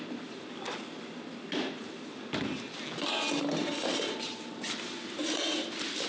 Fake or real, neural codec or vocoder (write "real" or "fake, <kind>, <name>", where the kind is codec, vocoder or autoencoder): real